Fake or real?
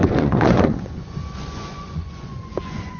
fake